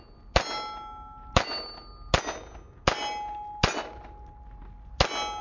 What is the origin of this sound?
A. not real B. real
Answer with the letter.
B